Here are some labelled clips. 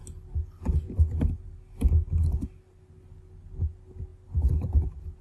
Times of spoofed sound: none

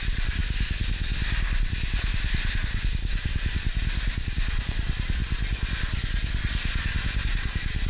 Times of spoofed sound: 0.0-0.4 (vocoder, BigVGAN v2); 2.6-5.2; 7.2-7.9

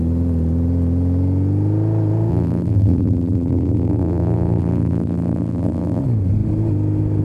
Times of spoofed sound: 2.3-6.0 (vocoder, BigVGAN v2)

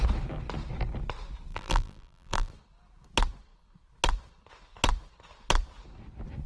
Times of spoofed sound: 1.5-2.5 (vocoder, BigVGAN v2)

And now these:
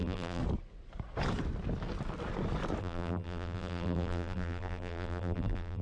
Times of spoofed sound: 0.0-0.4 (vocoder, BigVGAN v2); 2.8-5.8

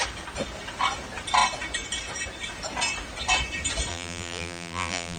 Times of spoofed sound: 3.9-5.2 (vocoder, BigVGAN v2)